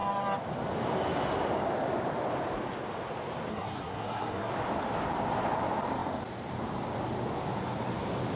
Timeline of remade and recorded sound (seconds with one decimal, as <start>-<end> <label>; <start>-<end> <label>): 0.0-3.5 recorded; 3.5-4.5 remade; 4.5-8.4 recorded